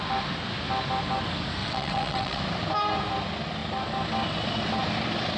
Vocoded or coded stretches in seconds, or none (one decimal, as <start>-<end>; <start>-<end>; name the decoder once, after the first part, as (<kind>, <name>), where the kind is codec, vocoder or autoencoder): 1.6-2.4 (vocoder, WaveNeXt)